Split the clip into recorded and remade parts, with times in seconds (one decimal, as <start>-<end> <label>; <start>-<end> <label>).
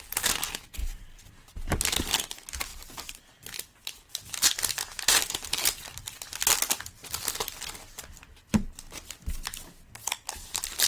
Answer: 0.0-0.8 recorded; 0.8-2.0 remade; 2.0-2.7 recorded; 2.7-4.3 remade; 4.3-10.9 recorded